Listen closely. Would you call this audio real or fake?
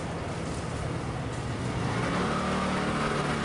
real